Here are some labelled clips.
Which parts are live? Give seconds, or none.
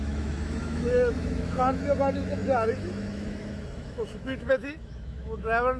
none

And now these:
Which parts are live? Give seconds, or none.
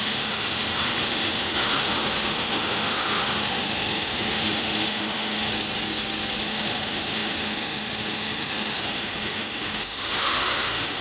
5.5-6.4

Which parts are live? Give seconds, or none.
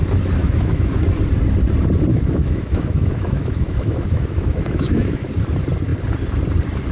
0.0-0.4; 1.0-2.1; 5.3-6.9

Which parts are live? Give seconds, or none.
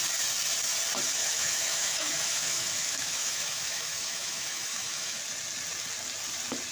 0.0-1.2; 5.2-6.7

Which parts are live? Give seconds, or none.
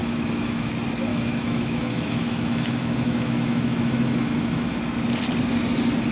0.7-1.1; 4.8-6.1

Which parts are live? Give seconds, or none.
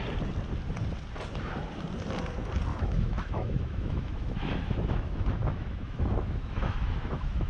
0.0-2.7